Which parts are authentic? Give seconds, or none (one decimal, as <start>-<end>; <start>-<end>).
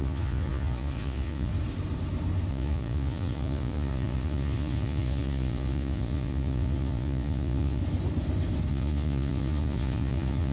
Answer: 1.5-2.5; 7.8-8.7